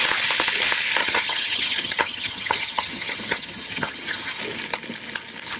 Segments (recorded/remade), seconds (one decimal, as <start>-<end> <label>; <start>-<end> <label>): 0.0-1.0 recorded; 1.0-4.4 remade; 4.4-5.6 recorded

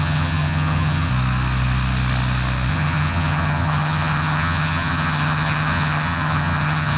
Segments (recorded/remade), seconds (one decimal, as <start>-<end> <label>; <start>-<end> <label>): 0.0-1.1 remade; 1.1-2.7 recorded; 2.7-7.0 remade

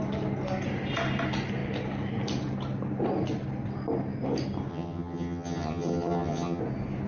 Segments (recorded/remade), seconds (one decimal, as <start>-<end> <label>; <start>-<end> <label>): 0.0-4.7 recorded; 4.7-6.6 remade; 6.6-7.1 recorded

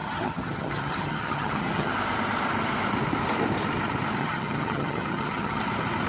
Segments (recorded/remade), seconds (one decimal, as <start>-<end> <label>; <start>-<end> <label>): 0.0-1.9 remade; 1.9-4.2 recorded; 4.2-5.6 remade; 5.6-6.1 recorded

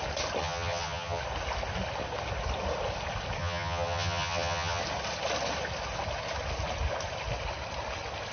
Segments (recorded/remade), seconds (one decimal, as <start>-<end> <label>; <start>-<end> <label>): 0.0-0.4 recorded; 0.4-1.2 remade; 1.2-3.4 recorded; 3.4-4.8 remade; 4.8-8.3 recorded

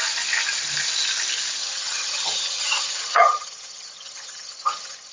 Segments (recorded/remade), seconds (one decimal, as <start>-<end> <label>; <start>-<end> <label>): 0.0-1.6 recorded; 1.6-5.1 remade